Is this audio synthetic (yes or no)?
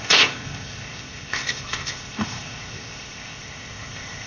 yes